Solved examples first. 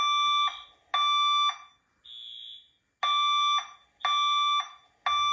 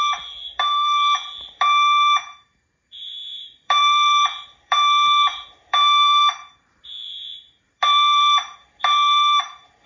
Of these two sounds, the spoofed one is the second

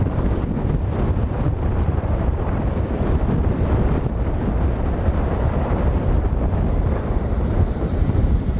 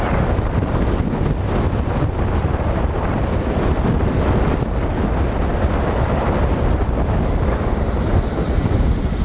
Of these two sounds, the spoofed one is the first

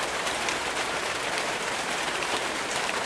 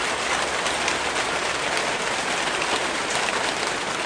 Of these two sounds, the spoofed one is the first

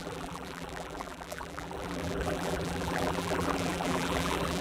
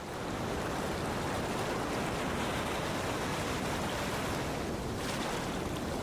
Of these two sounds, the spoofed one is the first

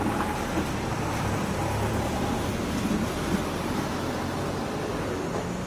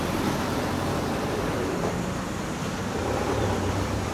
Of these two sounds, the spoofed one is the second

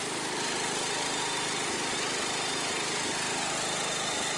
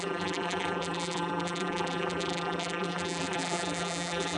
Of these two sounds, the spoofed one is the second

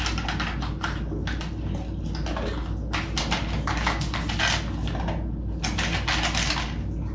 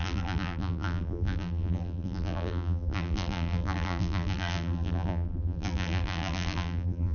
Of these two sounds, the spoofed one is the second